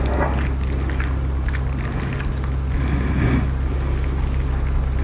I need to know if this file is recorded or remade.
recorded